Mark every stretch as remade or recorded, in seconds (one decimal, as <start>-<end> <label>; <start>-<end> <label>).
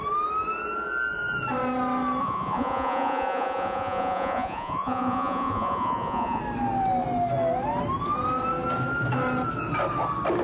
0.0-2.2 recorded; 2.2-6.4 remade; 6.4-10.4 recorded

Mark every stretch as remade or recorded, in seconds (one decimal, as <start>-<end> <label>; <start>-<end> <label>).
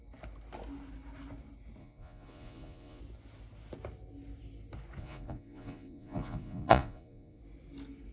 0.0-1.8 recorded; 1.8-3.0 remade; 3.0-5.0 recorded; 5.0-7.4 remade; 7.4-8.1 recorded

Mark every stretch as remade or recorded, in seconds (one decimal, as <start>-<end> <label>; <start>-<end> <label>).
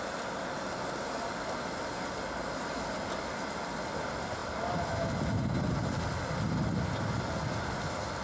0.0-8.2 recorded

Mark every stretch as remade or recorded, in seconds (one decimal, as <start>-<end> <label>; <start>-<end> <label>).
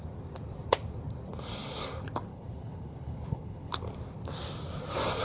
0.0-2.3 recorded; 2.3-3.8 remade; 3.8-5.2 recorded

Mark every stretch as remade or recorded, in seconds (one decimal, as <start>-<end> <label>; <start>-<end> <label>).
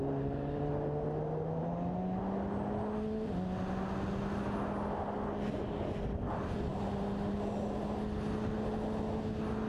0.0-0.7 remade; 0.7-9.7 recorded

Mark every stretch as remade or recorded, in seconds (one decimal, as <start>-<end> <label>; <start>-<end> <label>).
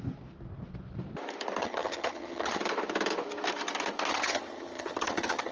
0.0-1.6 recorded; 1.6-2.6 remade; 2.6-4.1 recorded; 4.1-5.5 remade